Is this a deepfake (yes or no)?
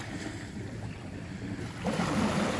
no